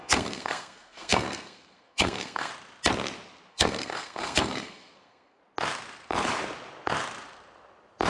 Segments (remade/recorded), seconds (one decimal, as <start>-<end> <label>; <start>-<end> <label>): 0.0-2.5 remade; 2.5-3.5 recorded; 3.5-5.4 remade; 5.4-8.1 recorded